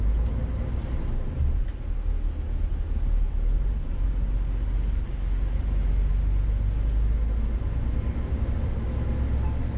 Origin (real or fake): real